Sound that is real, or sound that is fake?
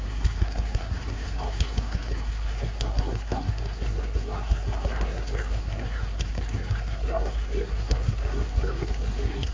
fake